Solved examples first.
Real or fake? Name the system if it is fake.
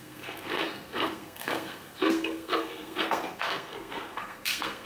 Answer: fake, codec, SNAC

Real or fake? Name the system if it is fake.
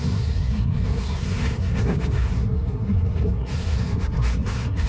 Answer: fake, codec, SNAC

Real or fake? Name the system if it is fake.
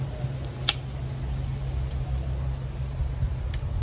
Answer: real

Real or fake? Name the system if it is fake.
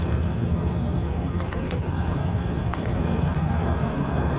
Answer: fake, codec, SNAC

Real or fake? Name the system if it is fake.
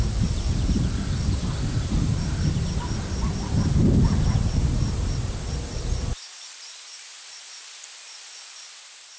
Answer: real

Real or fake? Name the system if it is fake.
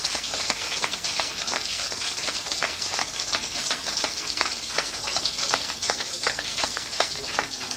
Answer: fake, codec, SNAC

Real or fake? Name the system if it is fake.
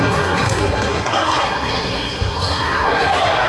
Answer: fake, codec, SNAC